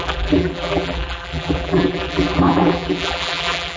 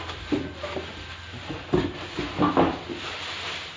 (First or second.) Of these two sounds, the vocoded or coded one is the first